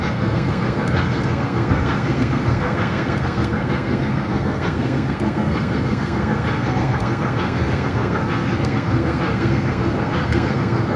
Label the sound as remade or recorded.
remade